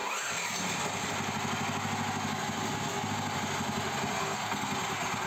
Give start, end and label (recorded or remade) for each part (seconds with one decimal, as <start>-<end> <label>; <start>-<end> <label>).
0.0-4.2 recorded; 4.2-4.7 remade; 4.7-5.3 recorded